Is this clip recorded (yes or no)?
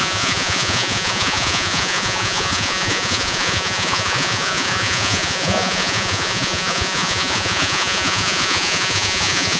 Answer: no